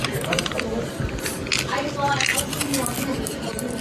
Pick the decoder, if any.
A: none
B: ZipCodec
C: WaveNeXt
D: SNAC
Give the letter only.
A